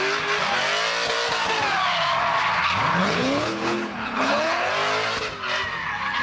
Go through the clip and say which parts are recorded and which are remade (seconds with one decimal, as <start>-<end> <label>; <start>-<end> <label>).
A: 0.0-3.0 recorded; 3.0-4.7 remade; 4.7-6.2 recorded